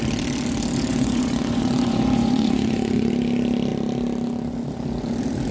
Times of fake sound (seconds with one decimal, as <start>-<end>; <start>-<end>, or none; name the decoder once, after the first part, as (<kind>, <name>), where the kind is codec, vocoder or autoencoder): 0.9-3.1 (vocoder, Vocos)